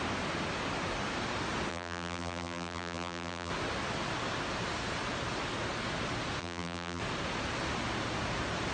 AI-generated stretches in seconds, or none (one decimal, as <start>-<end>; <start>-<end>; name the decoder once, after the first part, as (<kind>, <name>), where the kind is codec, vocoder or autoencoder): 1.7-3.5 (vocoder, BigVGAN v2); 6.4-7.0